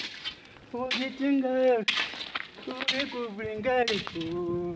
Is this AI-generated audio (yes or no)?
no